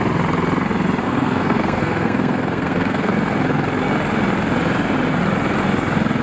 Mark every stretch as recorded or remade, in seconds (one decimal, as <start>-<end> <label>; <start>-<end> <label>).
0.0-1.0 recorded; 1.0-3.1 remade; 3.1-6.2 recorded